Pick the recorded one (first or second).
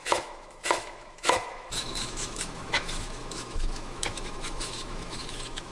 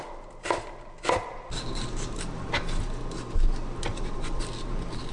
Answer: second